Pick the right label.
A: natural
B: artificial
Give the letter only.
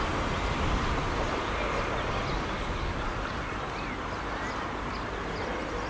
A